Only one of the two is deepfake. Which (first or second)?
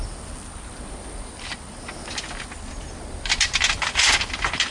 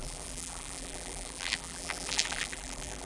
second